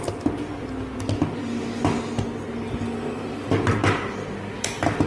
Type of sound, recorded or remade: recorded